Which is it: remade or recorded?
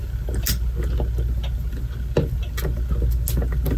recorded